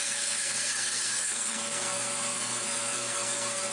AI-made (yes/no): yes